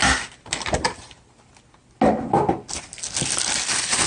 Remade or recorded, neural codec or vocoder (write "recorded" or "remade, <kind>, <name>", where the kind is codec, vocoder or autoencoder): recorded